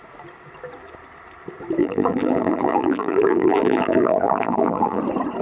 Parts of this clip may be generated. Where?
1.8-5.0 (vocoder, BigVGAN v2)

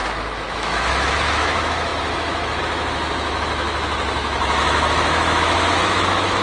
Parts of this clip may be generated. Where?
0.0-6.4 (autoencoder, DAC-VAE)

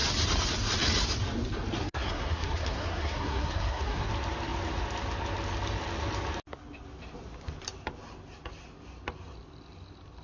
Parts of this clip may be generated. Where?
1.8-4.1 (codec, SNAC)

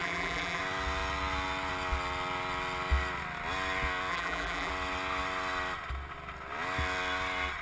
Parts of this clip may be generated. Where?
0.0-0.6 (vocoder, BigVGAN v2); 4.1-4.7

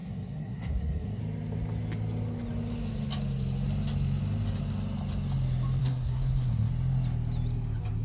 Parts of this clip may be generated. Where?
0.0-1.2 (codec, SNAC); 5.8-6.7